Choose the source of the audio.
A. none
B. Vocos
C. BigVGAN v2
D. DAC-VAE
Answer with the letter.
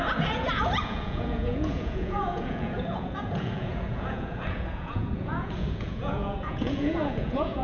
B